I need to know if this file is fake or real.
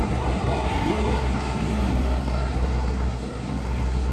fake